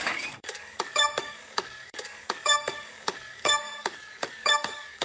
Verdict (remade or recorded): remade